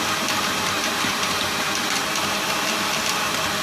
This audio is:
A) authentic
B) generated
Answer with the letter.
B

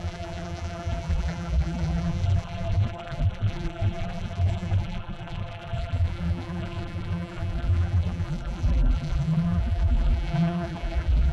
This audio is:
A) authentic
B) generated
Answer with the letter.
B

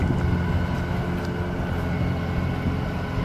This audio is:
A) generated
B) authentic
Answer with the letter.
B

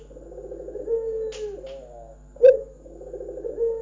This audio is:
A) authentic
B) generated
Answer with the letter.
A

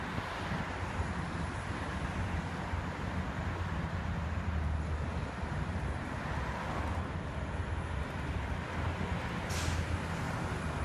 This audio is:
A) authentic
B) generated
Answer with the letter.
A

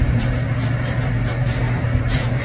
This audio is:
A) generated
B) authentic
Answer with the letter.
A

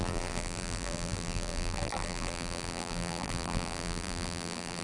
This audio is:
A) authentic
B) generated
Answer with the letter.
B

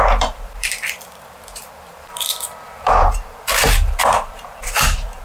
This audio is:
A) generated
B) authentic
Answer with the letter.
A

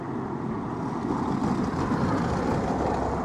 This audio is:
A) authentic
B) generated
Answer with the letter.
A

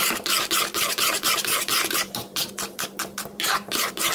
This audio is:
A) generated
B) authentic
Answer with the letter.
A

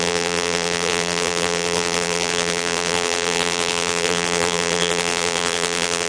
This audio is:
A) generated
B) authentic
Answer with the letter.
A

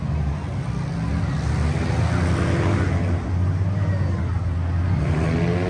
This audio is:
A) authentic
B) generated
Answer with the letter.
A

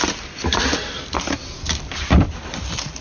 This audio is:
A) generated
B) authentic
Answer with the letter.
A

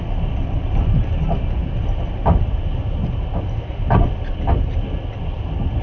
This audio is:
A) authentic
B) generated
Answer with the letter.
A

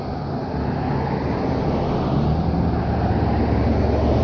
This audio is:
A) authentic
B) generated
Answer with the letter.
A